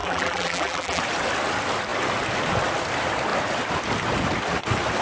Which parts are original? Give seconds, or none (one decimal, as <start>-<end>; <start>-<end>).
1.0-5.0